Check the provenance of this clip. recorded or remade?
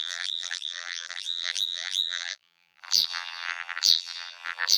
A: remade